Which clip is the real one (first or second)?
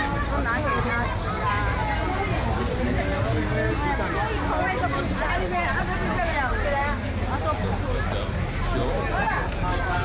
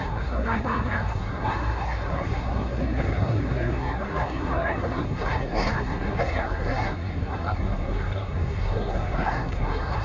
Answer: first